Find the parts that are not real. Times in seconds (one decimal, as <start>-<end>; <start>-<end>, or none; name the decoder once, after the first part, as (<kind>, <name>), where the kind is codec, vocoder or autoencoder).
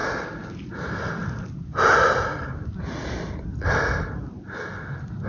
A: none